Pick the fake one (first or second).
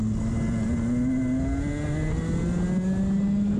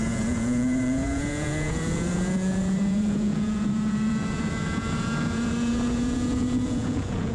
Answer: second